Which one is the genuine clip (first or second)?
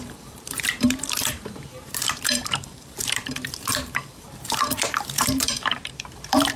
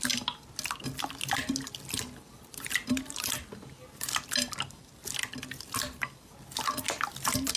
second